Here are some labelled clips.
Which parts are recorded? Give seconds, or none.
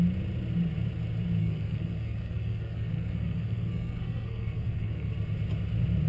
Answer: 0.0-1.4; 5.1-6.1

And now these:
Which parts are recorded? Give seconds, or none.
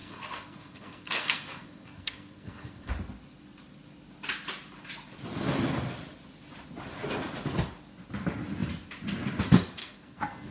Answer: 2.9-9.8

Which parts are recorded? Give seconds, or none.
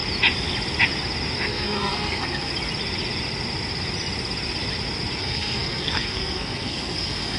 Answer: 0.0-1.5; 2.5-5.2